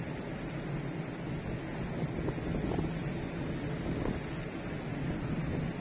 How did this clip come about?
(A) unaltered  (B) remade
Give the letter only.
A